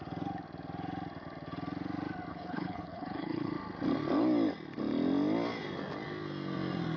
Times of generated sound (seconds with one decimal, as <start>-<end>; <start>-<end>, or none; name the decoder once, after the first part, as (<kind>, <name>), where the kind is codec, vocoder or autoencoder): 2.3-3.5 (codec, HILCodec)